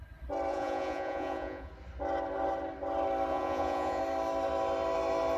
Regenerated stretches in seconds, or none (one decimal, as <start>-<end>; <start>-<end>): 0.5-1.7; 3.3-4.0